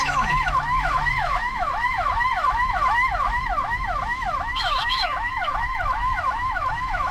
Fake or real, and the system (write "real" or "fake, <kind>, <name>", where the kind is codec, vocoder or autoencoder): fake, autoencoder, DAC-VAE